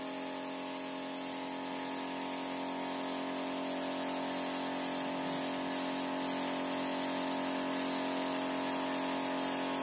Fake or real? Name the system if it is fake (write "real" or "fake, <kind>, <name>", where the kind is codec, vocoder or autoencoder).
real